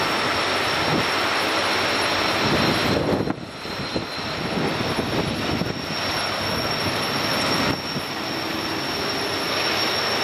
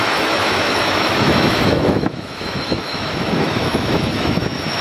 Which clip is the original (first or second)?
first